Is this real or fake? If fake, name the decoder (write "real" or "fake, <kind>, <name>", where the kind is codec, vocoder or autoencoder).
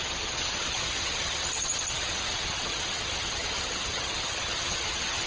fake, vocoder, HiFi-GAN